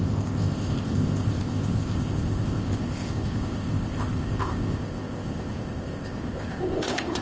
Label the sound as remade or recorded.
remade